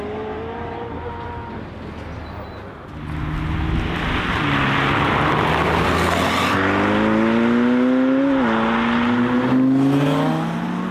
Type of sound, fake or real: real